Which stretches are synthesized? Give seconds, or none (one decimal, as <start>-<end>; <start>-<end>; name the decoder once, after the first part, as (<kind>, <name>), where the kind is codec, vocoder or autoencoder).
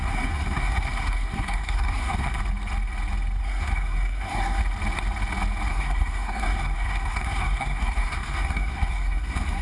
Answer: 0.0-2.4 (codec, SNAC); 3.4-4.6; 5.7-9.6